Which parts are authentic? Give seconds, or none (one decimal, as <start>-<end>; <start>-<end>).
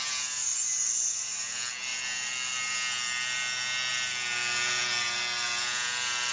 0.0-6.3